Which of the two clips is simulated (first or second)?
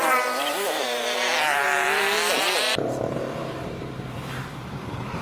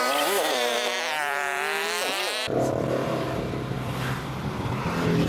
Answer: first